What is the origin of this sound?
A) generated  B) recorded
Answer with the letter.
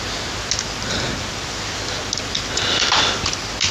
B